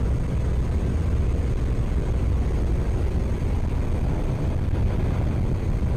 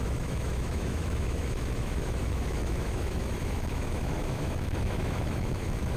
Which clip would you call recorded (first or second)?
first